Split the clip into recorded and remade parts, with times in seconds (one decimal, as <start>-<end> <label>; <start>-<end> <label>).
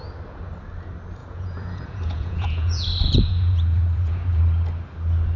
0.0-1.2 recorded; 1.2-4.4 remade; 4.4-5.4 recorded